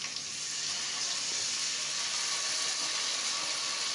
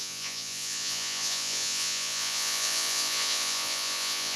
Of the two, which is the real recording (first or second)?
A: first